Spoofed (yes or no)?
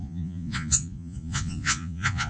yes